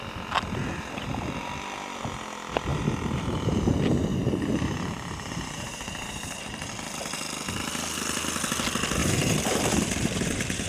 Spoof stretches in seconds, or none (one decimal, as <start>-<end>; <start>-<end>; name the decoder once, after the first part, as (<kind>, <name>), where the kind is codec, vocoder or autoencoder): 2.7-3.6 (vocoder, BigVGAN v2); 4.1-6.7; 9.0-10.7